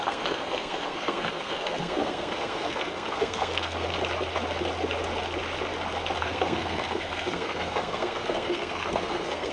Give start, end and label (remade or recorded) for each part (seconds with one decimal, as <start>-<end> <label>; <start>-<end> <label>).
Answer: 0.0-3.9 remade; 3.9-6.2 recorded; 6.2-9.5 remade